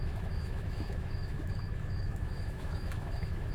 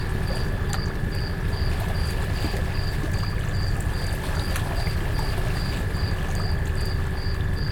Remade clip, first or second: first